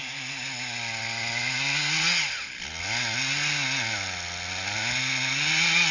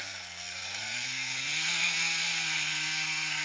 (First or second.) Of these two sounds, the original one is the first